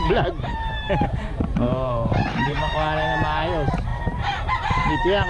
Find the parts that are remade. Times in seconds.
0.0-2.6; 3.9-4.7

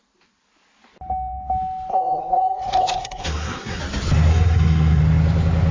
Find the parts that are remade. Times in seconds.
1.9-3.8; 4.3-5.0